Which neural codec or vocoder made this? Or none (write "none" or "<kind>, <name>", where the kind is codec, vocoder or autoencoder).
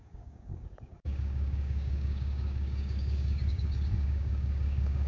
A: codec, DAC